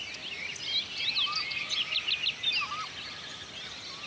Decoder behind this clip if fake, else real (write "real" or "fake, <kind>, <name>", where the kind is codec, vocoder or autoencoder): real